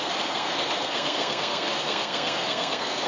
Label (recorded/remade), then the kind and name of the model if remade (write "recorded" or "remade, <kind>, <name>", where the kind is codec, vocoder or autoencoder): remade, codec, SNAC